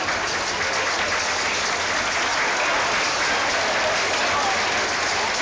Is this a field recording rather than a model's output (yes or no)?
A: yes